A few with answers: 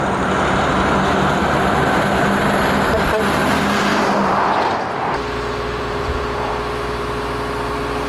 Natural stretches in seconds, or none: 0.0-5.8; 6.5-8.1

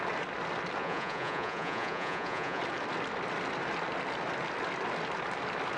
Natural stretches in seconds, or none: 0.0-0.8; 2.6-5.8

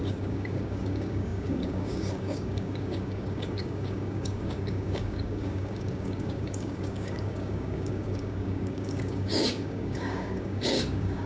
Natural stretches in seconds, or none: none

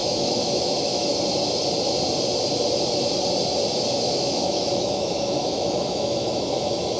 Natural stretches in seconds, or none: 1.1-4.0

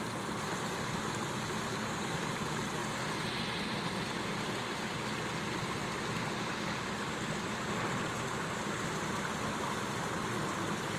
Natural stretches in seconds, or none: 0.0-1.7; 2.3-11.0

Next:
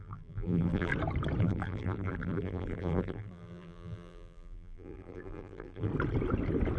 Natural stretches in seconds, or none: 0.9-1.4; 5.9-6.8

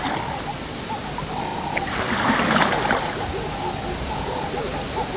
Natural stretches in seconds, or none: 0.0-5.2